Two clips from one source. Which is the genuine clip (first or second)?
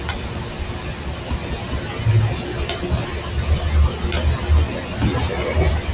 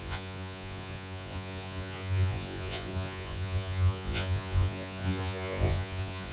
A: first